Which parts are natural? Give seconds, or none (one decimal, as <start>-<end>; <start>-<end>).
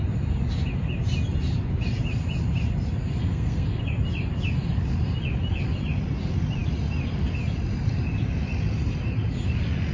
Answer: 0.0-3.2; 3.8-9.9